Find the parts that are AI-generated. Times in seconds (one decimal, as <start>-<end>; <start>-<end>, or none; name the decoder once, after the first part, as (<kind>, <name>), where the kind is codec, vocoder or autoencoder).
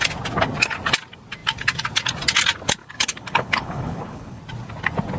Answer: 2.8-4.4 (codec, HILCodec)